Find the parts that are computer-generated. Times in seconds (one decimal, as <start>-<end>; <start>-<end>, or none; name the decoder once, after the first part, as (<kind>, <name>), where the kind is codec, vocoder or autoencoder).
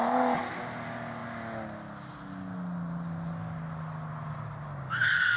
none